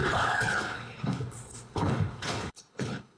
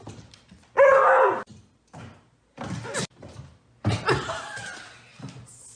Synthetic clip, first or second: first